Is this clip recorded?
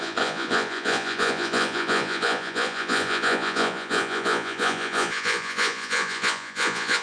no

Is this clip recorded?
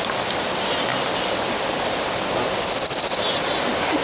yes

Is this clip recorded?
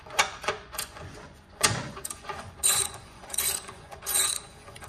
no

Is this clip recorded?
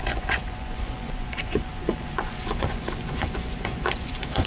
no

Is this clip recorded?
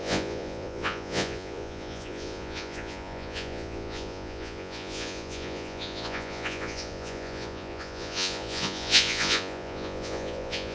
no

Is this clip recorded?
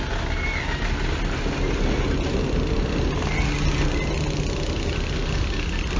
yes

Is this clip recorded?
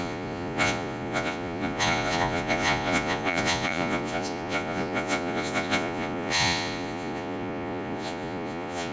no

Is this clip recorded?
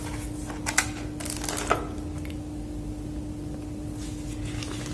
yes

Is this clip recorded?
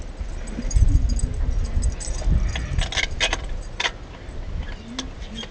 yes